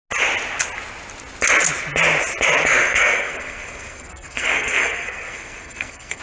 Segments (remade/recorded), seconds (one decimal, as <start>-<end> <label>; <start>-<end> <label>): 0.0-2.8 recorded; 2.8-6.2 remade